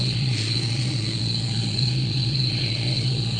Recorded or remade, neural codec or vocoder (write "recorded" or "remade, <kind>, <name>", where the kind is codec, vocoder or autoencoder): remade, vocoder, Vocos